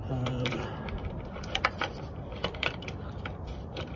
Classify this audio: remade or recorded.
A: remade